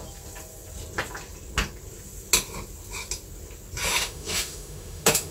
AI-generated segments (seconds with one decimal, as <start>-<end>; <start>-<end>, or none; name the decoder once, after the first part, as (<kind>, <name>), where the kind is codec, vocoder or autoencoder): 3.9-5.3 (autoencoder, DAC-VAE)

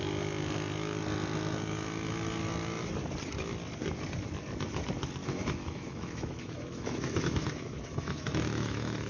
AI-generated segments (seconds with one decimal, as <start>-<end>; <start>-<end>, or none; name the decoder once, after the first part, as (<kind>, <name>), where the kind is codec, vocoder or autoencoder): 5.2-9.1 (autoencoder, DAC-VAE)

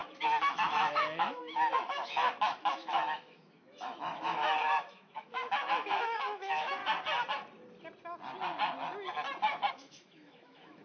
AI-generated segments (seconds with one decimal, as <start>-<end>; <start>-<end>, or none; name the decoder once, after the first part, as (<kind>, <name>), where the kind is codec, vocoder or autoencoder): 0.0-6.8 (autoencoder, DAC-VAE); 9.7-10.8

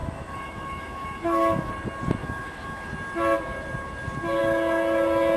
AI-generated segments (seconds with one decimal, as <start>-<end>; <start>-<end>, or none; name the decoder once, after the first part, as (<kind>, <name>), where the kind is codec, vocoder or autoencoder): 0.0-1.7 (autoencoder, DAC-VAE); 2.2-2.9

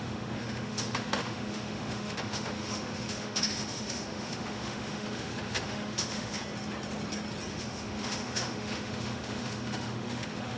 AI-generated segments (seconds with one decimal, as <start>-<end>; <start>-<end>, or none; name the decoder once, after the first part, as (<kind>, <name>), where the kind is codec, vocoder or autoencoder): 0.0-6.4 (autoencoder, DAC-VAE); 7.5-10.6